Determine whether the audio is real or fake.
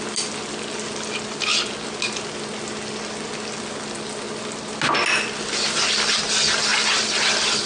real